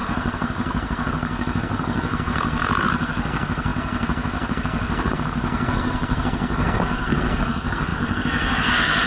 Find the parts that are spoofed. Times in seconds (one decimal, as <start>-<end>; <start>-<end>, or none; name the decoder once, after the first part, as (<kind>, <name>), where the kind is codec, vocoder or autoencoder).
0.0-9.1 (codec, SNAC)